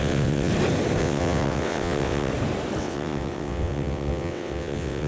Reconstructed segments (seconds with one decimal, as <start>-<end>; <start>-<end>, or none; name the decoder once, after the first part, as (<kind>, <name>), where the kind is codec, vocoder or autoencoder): 0.0-0.5 (vocoder, WaveNeXt); 1.0-2.3; 2.8-5.1